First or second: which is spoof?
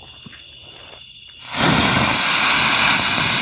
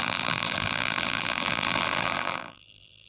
second